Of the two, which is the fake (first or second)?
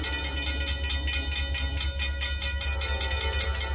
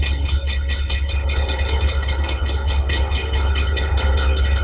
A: second